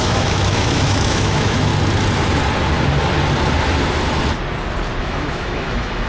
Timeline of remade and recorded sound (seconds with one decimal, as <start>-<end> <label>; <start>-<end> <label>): 0.0-1.7 remade; 1.7-5.0 recorded; 5.0-6.1 remade